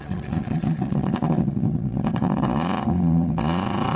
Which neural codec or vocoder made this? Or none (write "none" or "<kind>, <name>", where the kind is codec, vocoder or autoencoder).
vocoder, Vocos